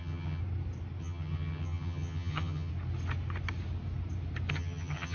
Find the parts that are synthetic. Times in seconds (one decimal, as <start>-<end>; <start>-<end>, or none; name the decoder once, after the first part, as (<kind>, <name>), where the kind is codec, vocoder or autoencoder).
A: 0.0-0.4 (vocoder, HiFi-GAN); 1.0-2.7; 4.5-5.1